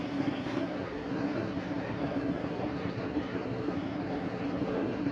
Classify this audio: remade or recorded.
remade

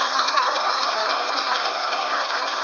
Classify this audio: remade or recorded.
remade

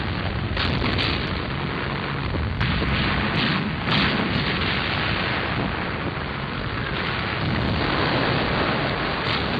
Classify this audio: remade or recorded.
recorded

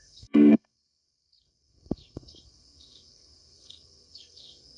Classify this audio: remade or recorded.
remade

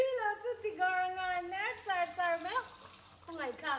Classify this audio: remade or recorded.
recorded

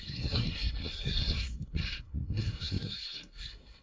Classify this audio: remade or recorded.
remade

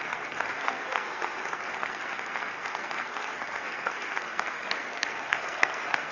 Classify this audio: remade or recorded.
remade